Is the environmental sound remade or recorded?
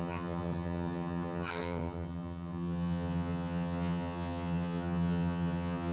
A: remade